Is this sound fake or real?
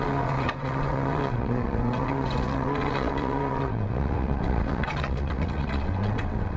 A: fake